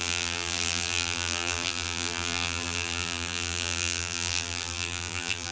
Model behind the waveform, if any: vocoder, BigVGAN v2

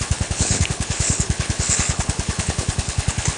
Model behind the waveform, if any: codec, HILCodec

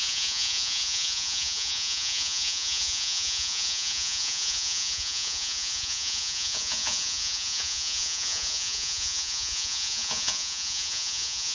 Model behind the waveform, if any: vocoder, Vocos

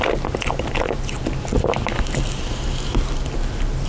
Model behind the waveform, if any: none